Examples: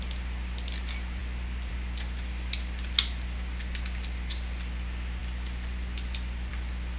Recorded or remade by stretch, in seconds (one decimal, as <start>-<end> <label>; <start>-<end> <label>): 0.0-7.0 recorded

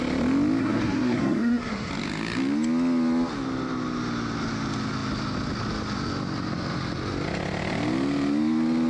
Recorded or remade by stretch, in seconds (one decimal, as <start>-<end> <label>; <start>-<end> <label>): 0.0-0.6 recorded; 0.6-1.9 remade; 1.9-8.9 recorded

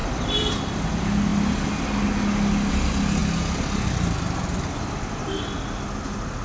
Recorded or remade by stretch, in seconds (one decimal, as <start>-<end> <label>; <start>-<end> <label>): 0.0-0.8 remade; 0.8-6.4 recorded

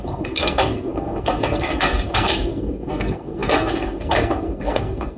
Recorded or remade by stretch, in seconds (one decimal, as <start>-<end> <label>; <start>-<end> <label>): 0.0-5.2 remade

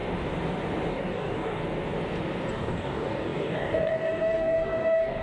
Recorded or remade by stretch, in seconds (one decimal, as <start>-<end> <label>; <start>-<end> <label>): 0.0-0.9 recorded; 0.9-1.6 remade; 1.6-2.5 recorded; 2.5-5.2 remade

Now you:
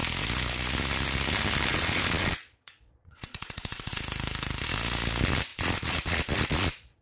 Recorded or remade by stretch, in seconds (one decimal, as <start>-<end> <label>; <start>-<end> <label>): 0.0-1.7 recorded; 1.7-4.0 remade; 4.0-5.5 recorded; 5.5-7.0 remade

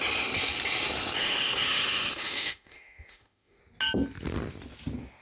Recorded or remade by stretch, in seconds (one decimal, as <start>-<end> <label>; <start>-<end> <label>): 0.0-1.2 recorded; 1.2-3.6 remade; 3.6-5.2 recorded

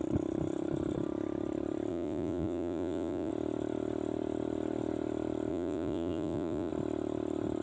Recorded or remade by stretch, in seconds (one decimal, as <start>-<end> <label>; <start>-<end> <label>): 0.0-1.9 recorded; 1.9-3.3 remade; 3.3-5.5 recorded; 5.5-6.7 remade; 6.7-7.6 recorded